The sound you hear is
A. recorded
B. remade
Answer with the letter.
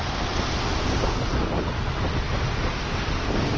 A